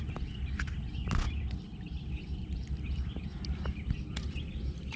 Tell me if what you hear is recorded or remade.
recorded